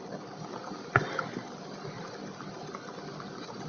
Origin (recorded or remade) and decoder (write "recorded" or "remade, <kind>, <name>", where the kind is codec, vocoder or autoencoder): recorded